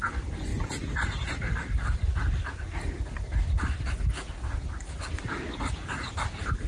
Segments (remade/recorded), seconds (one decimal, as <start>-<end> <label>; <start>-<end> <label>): 0.0-6.7 recorded